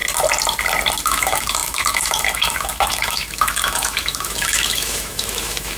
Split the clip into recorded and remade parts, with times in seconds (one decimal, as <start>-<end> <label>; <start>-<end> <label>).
0.0-1.0 recorded; 1.0-5.8 remade